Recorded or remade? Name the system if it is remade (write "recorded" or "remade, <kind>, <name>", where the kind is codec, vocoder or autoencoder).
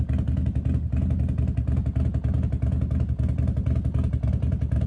recorded